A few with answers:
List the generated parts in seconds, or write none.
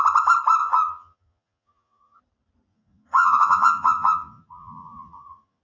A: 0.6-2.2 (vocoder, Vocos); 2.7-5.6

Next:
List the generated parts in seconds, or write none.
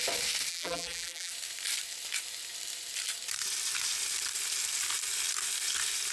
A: 0.5-1.3 (vocoder, BigVGAN v2)